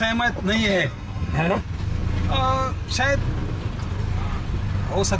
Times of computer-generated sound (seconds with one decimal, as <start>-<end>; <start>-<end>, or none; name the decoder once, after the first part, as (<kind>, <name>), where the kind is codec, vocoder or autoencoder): 0.7-1.6 (codec, SNAC)